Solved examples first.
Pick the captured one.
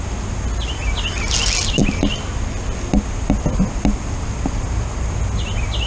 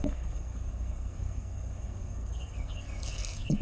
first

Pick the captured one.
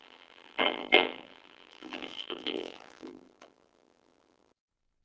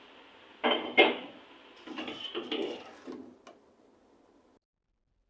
second